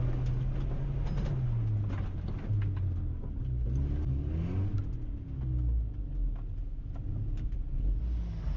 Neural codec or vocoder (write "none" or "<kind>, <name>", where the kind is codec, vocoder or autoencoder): none